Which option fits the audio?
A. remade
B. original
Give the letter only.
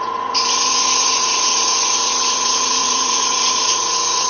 A